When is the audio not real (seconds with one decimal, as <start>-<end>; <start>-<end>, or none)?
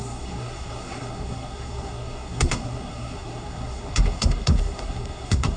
0.0-5.6